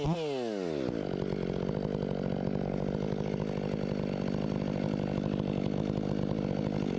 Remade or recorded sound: recorded